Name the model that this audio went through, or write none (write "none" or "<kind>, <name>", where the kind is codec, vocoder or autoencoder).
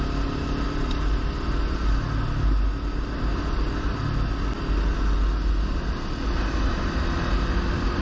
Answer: none